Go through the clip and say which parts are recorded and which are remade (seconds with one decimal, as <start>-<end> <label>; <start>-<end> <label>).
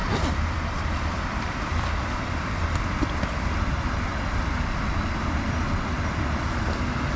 0.0-2.5 remade; 2.5-7.2 recorded